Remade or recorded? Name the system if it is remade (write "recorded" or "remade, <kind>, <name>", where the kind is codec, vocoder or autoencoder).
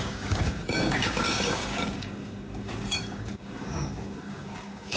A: remade, codec, DAC